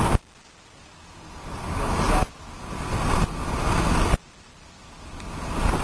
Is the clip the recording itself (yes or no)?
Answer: yes